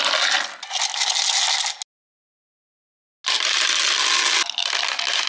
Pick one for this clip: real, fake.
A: real